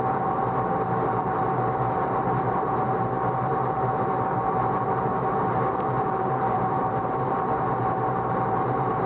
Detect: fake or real fake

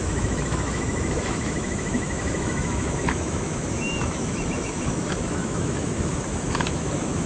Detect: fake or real fake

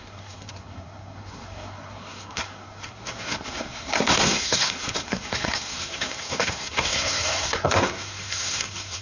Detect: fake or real fake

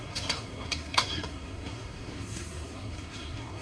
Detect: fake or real fake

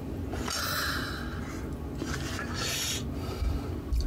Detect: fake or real real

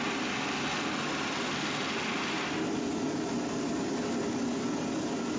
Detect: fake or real real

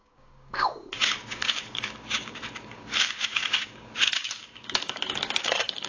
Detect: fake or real fake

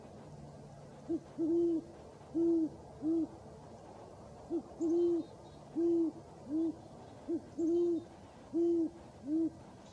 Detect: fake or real real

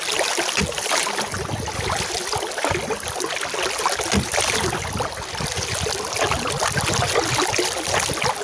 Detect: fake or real real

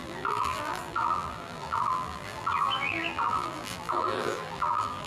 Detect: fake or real fake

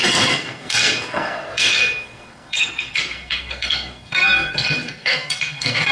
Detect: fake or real fake